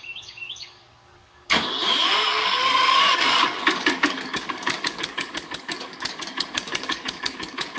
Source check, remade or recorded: remade